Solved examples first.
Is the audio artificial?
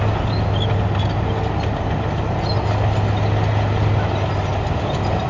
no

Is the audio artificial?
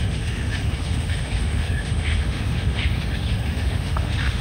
yes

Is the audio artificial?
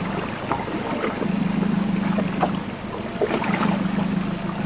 no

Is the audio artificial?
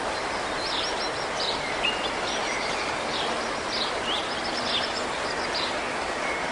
no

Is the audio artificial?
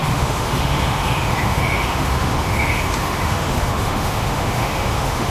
yes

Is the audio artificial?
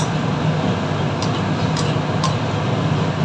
no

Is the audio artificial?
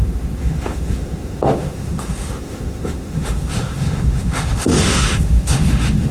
yes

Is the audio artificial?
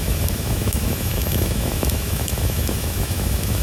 yes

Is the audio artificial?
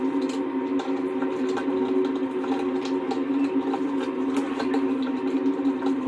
no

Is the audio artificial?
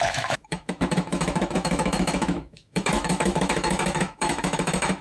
yes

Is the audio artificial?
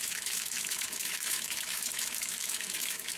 yes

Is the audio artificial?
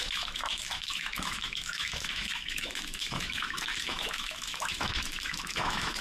yes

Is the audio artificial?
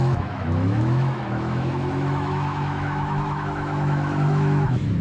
yes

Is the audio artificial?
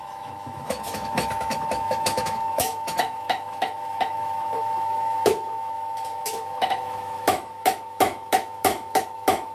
yes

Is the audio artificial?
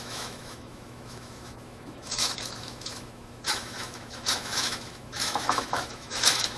yes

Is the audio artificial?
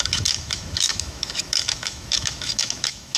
yes